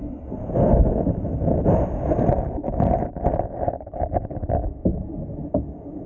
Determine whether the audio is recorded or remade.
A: recorded